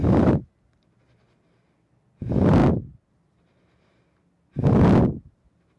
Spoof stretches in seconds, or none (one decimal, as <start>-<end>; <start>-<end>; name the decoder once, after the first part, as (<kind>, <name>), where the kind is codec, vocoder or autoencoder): none